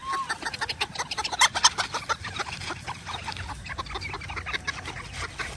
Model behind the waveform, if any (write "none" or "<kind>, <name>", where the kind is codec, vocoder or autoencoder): none